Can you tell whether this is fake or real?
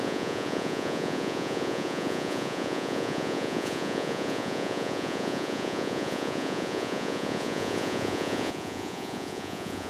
fake